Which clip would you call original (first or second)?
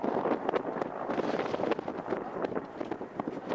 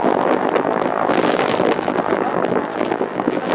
first